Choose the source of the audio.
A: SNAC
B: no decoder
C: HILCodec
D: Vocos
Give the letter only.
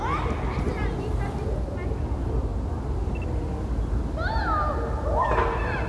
B